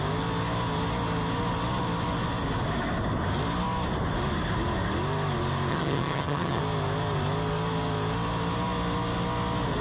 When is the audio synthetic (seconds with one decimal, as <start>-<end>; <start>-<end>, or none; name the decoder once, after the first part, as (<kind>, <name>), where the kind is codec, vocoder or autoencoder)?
5.7-6.6 (vocoder, HiFi-GAN)